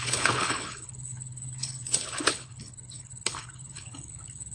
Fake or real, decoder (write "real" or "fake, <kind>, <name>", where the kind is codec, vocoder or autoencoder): fake, codec, HILCodec